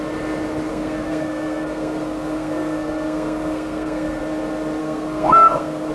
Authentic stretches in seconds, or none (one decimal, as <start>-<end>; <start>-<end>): 0.0-0.7; 4.2-4.8